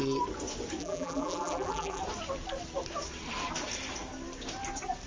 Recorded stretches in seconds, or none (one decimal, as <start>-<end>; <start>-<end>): 0.0-0.8; 2.0-5.1